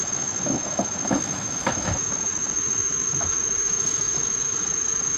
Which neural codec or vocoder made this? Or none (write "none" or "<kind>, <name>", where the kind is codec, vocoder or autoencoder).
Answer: autoencoder, DAC-VAE